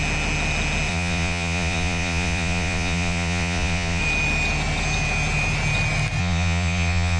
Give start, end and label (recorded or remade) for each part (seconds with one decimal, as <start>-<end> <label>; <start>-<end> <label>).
0.0-0.9 recorded; 0.9-4.0 remade; 4.0-6.2 recorded; 6.2-7.2 remade